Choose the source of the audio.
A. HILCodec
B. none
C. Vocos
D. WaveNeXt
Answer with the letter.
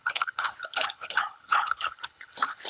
A